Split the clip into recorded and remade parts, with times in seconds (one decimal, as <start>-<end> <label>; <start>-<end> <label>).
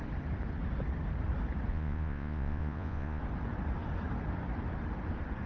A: 0.0-1.7 recorded; 1.7-3.2 remade; 3.2-5.5 recorded